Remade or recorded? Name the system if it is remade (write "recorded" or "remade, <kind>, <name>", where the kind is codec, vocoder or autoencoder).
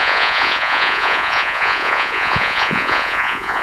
remade, vocoder, Vocos